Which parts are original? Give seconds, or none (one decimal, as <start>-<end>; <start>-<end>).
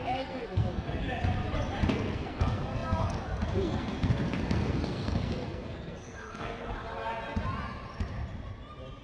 1.0-1.9; 6.7-9.0